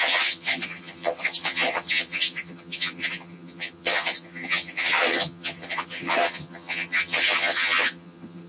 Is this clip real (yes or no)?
no